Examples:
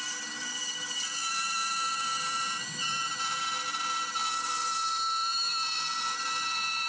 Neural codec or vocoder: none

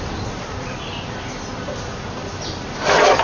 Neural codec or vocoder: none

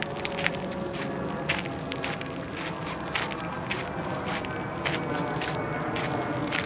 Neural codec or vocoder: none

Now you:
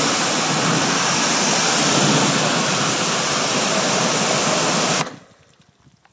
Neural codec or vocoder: none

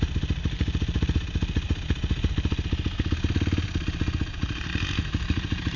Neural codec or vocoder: none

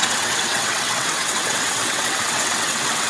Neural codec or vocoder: vocoder, WaveNeXt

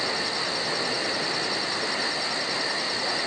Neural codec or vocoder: none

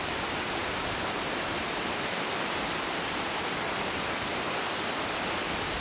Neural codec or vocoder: none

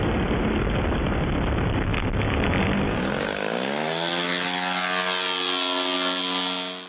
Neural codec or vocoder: none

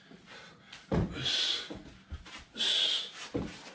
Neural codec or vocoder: none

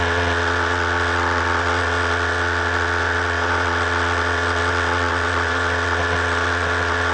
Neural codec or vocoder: vocoder, WaveNeXt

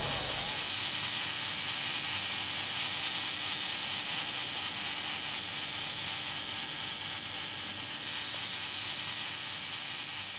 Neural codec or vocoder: none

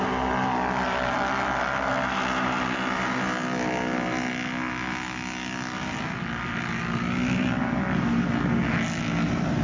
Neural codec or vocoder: none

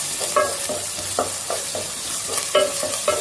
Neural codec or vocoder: none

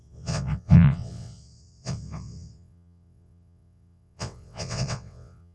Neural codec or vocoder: vocoder, WaveNeXt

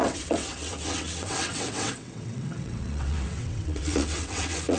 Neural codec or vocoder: vocoder, WaveNeXt